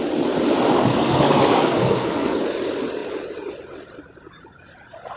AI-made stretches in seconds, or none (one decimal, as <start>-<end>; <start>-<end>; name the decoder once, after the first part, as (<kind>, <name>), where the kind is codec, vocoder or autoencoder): 0.9-2.4 (codec, SNAC)